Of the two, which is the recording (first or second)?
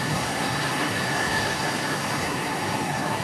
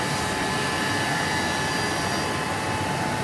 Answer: second